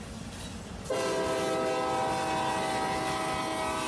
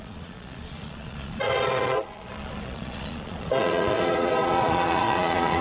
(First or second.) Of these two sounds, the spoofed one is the second